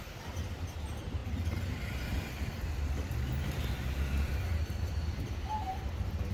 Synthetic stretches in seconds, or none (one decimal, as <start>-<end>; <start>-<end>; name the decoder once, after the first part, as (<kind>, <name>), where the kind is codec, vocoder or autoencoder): none